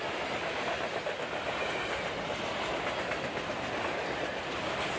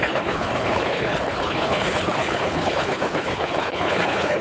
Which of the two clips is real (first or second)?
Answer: first